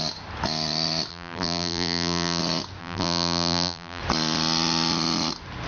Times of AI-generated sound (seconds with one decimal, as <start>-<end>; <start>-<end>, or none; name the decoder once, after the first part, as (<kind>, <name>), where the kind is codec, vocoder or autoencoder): 1.1-2.4 (vocoder, BigVGAN v2); 2.8-4.0